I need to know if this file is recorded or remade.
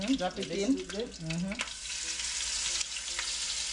recorded